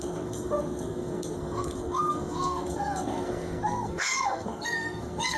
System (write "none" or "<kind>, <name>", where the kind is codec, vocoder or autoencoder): codec, SNAC